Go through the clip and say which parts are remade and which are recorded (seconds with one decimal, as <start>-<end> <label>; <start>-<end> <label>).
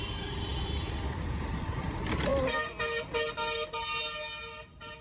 0.0-5.0 recorded